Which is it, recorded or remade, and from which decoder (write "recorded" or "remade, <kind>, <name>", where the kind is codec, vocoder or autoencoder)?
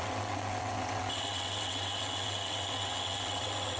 remade, vocoder, WaveNeXt